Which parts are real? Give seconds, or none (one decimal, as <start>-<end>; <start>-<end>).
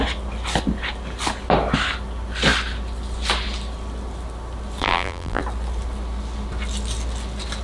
0.0-4.8; 5.4-7.6